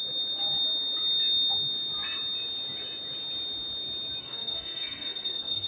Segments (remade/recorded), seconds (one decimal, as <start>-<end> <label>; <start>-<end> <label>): 0.0-4.2 recorded; 4.2-5.7 remade